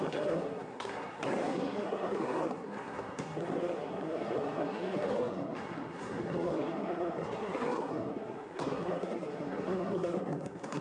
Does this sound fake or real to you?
fake